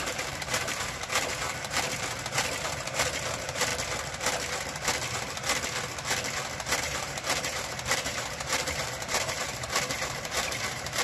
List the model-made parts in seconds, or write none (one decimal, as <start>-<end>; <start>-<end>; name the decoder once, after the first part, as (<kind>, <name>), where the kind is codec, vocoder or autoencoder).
0.0-3.7 (vocoder, BigVGAN v2); 6.8-11.0